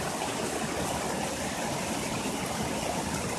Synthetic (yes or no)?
no